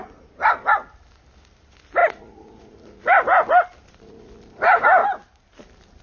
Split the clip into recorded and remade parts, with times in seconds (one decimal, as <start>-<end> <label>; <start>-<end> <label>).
0.0-6.0 recorded